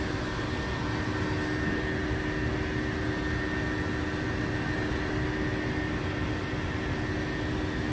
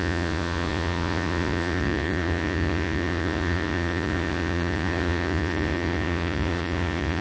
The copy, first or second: second